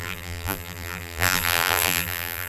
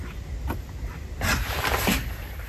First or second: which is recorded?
second